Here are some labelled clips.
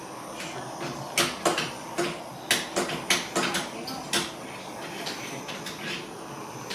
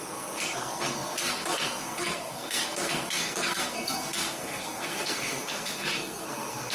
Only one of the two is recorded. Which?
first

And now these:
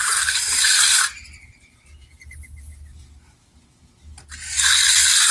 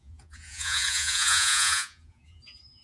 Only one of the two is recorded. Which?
first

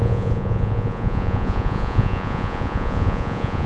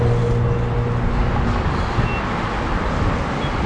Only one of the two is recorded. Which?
second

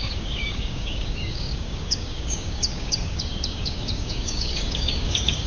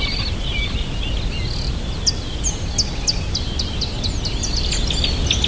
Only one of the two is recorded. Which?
second